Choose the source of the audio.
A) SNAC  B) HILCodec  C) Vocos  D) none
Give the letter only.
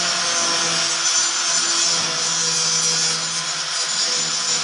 D